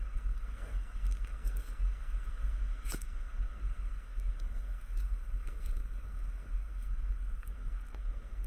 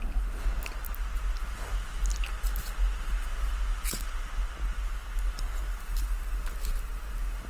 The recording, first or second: second